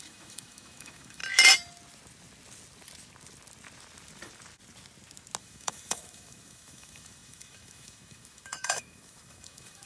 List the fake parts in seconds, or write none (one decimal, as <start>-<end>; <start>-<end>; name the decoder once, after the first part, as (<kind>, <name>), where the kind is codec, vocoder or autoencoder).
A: 0.0-1.2 (autoencoder, DAC-VAE); 5.4-9.9